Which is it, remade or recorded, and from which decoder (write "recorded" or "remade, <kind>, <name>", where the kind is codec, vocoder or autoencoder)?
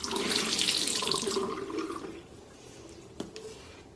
recorded